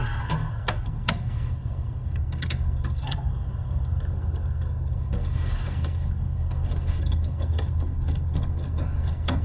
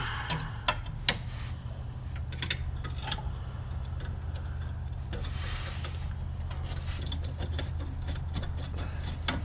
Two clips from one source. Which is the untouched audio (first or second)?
second